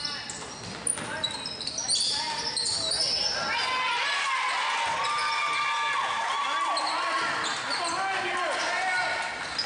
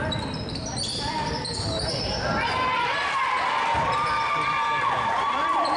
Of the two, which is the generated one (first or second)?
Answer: second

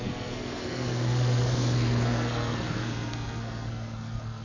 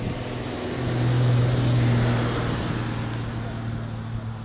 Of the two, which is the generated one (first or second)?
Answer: first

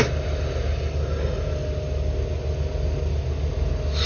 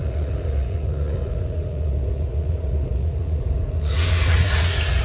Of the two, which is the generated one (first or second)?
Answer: second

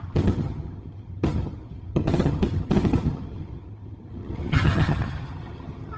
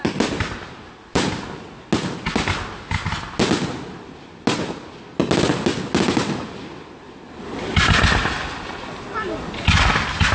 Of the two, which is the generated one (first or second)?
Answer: first